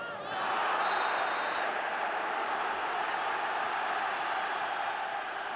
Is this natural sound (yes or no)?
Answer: yes